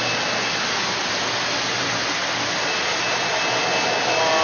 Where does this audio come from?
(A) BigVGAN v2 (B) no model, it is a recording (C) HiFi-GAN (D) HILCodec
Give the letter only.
B